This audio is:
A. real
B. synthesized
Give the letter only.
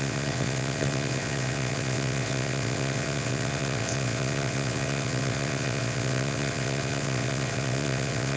B